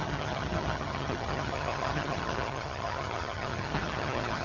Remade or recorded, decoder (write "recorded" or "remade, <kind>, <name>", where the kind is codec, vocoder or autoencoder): remade, vocoder, HiFi-GAN